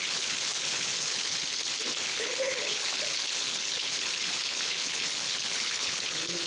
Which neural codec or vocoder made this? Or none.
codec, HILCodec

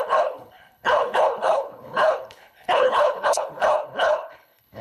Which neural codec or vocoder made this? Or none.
codec, HILCodec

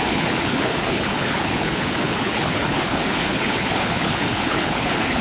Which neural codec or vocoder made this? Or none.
codec, HILCodec